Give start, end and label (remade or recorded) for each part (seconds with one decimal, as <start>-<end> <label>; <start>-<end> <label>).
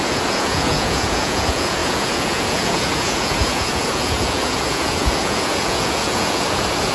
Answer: 0.0-6.9 remade